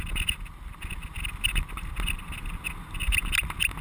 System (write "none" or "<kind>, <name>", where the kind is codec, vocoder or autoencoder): none